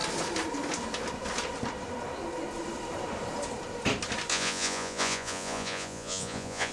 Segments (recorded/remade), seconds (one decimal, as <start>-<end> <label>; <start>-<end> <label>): 0.0-4.3 recorded; 4.3-6.7 remade